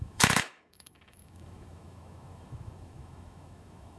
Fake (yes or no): yes